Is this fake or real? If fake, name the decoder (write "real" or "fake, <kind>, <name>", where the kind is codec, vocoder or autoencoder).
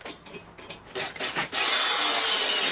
real